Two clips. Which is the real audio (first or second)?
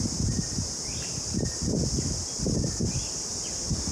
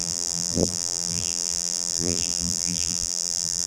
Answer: first